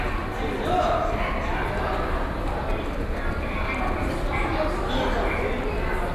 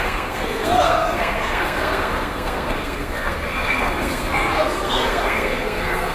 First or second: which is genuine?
first